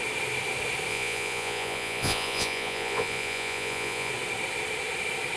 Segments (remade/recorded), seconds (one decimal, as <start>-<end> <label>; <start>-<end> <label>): 0.0-0.9 recorded; 0.9-4.1 remade; 4.1-5.4 recorded